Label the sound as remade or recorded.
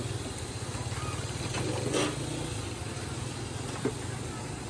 recorded